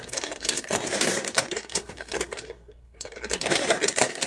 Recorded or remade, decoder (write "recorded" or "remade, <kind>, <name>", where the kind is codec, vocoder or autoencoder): remade, codec, SNAC